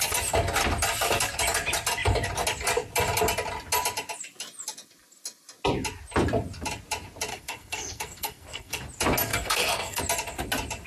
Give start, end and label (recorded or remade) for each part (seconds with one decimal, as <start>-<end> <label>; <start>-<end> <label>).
0.0-7.3 recorded; 7.3-8.8 remade; 8.8-9.3 recorded; 9.3-10.0 remade; 10.0-10.9 recorded